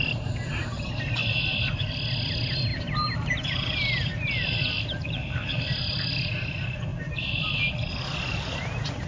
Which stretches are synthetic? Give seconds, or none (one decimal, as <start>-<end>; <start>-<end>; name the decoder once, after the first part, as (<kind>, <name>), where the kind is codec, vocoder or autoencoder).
1.2-1.7 (vocoder, BigVGAN v2); 2.7-6.0; 6.9-7.9